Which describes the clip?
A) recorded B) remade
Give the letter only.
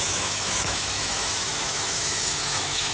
B